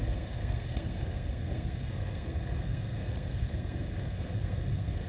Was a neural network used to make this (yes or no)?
yes